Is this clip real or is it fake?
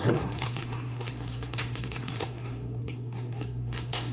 fake